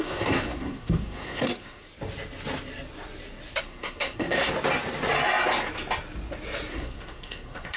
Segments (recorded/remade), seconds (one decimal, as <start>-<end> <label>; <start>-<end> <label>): 0.0-1.9 remade; 1.9-3.6 recorded; 3.6-4.5 remade; 4.5-6.7 recorded; 6.7-7.8 remade